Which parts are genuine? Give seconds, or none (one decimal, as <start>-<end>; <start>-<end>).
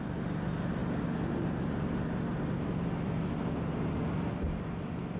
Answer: 0.0-5.2